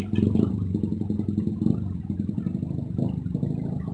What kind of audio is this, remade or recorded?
recorded